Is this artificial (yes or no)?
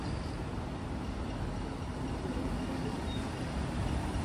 no